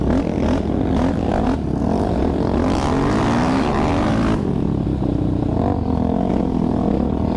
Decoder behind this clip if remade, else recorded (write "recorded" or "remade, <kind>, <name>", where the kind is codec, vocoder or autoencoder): recorded